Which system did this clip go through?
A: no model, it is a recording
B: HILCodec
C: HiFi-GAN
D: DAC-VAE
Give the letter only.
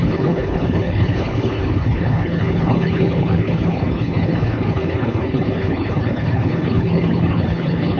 B